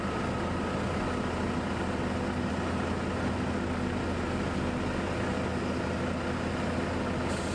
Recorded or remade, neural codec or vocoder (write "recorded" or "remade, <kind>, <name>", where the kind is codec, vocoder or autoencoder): recorded